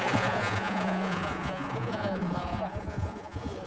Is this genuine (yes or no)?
no